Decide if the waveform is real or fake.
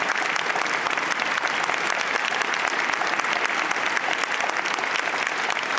real